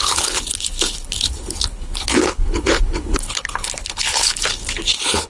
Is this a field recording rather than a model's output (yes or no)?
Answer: no